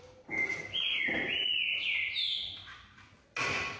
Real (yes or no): yes